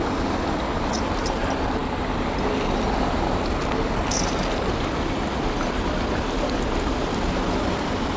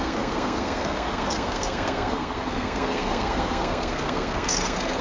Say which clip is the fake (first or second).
second